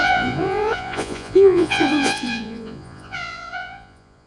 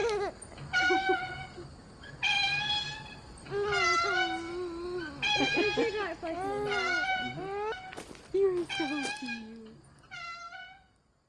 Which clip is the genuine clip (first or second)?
second